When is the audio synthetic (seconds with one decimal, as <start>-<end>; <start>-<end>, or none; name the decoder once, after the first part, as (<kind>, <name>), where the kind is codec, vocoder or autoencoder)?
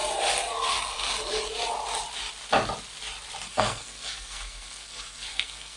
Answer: 3.5-5.8 (codec, SNAC)